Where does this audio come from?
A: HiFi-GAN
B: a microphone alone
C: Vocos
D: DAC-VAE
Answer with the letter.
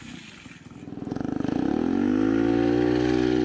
B